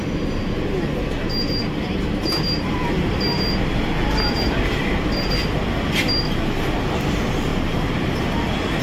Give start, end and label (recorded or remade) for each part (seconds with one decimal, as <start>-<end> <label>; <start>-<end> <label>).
0.0-7.5 recorded; 7.5-8.8 remade